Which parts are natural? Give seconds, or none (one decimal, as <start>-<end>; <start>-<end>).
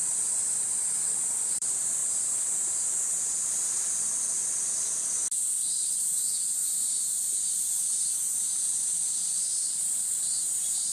2.0-3.2; 4.4-8.1